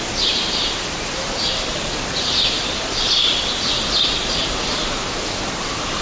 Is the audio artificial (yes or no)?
no